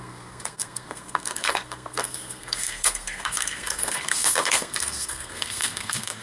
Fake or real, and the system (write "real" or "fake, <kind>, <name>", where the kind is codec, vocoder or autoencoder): fake, codec, SNAC